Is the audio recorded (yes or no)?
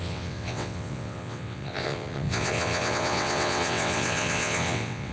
no